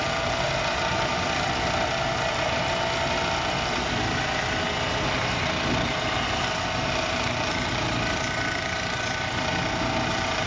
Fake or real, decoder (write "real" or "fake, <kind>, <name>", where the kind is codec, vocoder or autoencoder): real